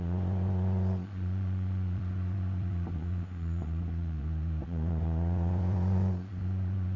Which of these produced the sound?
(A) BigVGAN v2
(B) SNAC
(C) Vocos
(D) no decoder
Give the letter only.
C